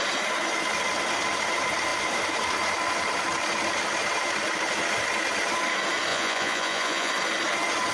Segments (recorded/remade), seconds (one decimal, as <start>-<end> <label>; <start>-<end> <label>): 0.0-6.1 recorded; 6.1-7.1 remade; 7.1-7.9 recorded